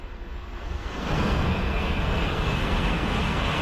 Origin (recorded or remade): remade